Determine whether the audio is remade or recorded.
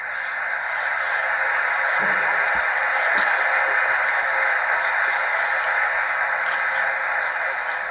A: recorded